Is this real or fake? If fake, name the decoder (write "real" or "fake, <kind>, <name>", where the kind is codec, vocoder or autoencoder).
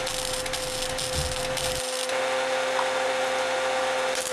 real